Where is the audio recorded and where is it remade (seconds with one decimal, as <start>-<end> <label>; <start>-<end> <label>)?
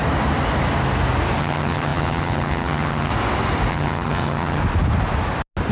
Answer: 0.0-1.4 recorded; 1.4-3.1 remade; 3.1-3.7 recorded; 3.7-4.6 remade; 4.6-5.7 recorded